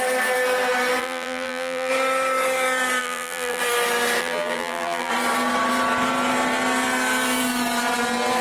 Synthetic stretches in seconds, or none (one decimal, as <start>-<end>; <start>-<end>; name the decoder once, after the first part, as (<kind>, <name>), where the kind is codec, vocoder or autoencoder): 1.0-1.9 (vocoder, BigVGAN v2); 3.0-3.6; 4.2-5.1